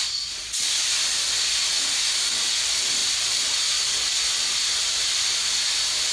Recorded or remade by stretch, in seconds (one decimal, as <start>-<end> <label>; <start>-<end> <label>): 0.0-6.1 recorded